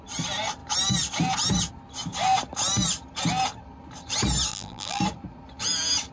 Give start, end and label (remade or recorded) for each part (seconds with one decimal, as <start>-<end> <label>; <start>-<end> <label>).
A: 0.0-4.5 recorded; 4.5-5.0 remade; 5.0-6.1 recorded